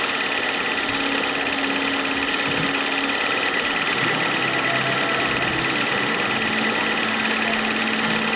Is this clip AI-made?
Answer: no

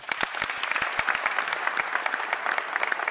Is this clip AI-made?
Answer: no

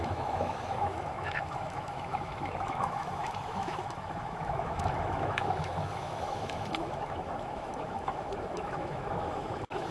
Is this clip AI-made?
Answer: yes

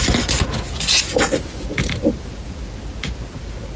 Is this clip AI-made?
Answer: no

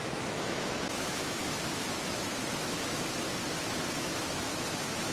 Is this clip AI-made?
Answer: yes